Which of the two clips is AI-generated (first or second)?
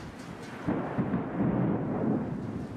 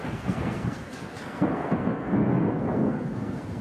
second